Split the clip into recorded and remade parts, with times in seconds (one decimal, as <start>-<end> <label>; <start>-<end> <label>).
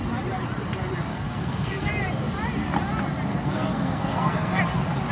0.0-1.1 recorded; 1.1-1.9 remade; 1.9-3.3 recorded; 3.3-4.6 remade; 4.6-5.1 recorded